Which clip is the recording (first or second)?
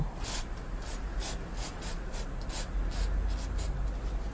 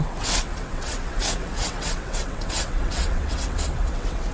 first